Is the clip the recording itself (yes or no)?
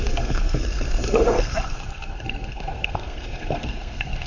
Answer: no